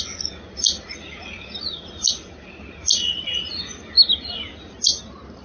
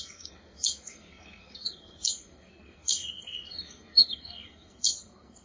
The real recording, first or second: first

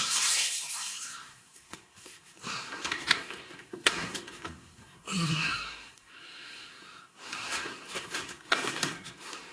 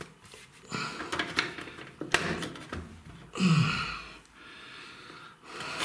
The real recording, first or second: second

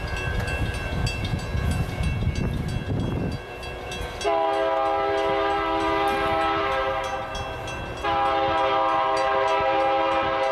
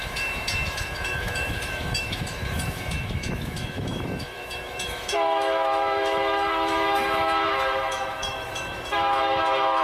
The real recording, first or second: first